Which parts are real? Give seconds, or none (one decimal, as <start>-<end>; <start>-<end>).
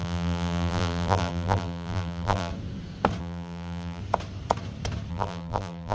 2.5-3.2; 4.0-5.1